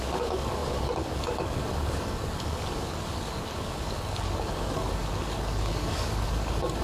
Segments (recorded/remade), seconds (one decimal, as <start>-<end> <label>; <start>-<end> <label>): 0.0-6.8 remade